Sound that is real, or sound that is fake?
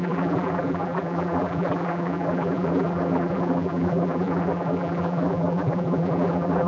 fake